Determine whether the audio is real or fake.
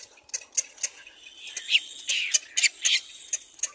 real